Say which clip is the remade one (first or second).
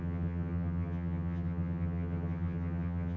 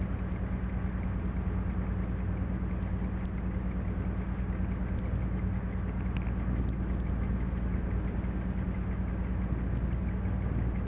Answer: first